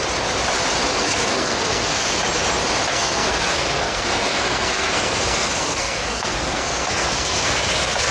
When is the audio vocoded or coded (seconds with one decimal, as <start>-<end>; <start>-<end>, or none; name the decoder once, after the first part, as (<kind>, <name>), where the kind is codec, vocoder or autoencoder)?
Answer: 0.9-2.2 (codec, SNAC); 2.9-8.1